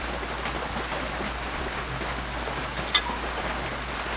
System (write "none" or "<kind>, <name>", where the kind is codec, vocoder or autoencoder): none